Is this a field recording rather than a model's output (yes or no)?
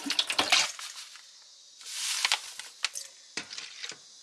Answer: yes